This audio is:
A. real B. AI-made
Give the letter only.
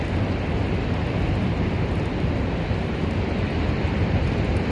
A